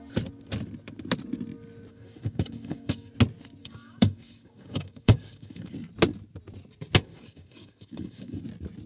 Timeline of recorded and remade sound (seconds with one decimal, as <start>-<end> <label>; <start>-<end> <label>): 0.0-1.9 recorded; 1.9-3.1 remade; 3.1-3.6 recorded; 3.6-5.7 remade; 5.7-7.1 recorded; 7.1-8.4 remade; 8.4-8.9 recorded